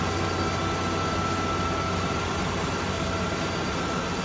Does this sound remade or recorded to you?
recorded